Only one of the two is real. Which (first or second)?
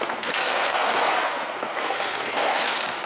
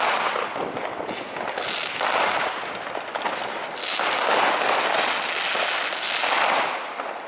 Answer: second